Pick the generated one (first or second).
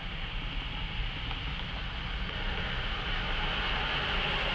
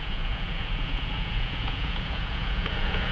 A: second